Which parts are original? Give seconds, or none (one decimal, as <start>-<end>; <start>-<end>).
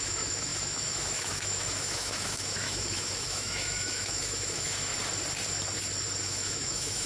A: 4.9-6.2